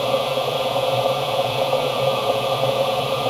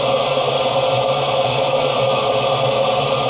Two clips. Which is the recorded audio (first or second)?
second